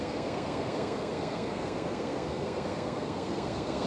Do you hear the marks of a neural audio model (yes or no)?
yes